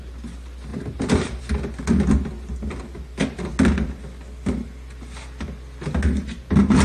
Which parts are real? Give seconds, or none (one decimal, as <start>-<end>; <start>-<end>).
0.0-0.7; 1.4-6.8